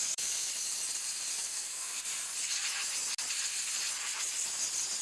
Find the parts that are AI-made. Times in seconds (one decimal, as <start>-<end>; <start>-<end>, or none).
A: 0.0-0.5; 1.3-2.0